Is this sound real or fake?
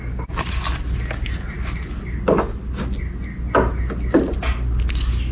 real